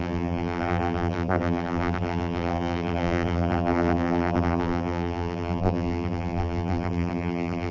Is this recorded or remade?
remade